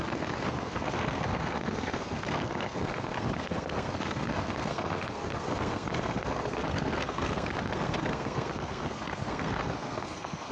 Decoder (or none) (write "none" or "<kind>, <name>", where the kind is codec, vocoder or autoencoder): codec, SNAC